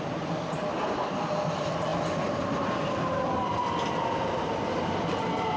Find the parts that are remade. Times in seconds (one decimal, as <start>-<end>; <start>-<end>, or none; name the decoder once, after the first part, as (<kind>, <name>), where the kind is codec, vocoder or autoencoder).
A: none